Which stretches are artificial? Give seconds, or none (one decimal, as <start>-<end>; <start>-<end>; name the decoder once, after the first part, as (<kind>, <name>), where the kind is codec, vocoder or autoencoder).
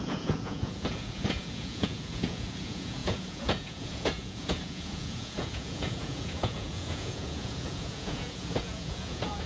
0.0-9.5 (vocoder, Vocos)